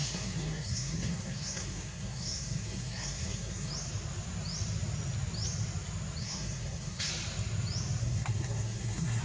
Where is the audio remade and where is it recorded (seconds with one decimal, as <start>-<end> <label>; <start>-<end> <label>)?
0.0-3.7 remade; 3.7-6.2 recorded; 6.2-7.1 remade; 7.1-8.0 recorded; 8.0-9.2 remade